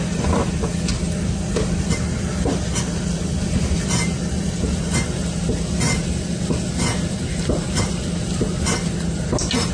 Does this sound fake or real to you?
real